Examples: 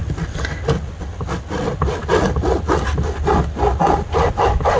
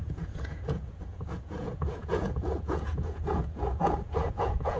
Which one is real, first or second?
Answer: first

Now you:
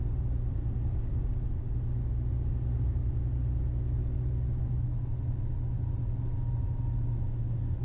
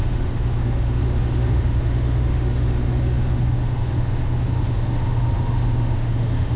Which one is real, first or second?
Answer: first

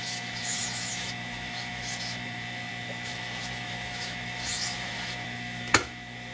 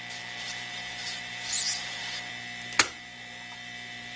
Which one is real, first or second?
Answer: second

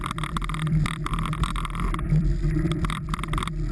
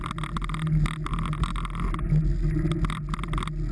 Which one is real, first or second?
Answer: second